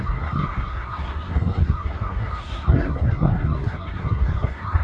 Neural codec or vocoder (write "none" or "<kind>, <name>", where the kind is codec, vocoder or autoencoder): codec, SNAC